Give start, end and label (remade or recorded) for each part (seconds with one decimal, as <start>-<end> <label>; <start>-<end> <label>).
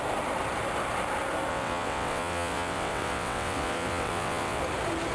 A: 0.0-1.5 recorded; 1.5-4.6 remade; 4.6-5.1 recorded